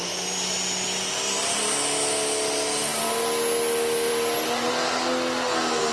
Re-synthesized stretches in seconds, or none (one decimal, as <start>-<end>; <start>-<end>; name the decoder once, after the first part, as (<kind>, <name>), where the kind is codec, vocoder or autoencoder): none